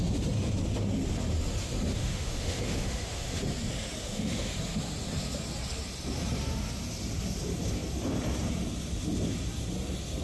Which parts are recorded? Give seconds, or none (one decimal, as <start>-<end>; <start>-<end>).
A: 0.0-1.9; 3.4-4.0; 4.5-10.2